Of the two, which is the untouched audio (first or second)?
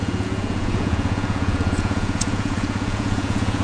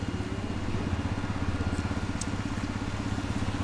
second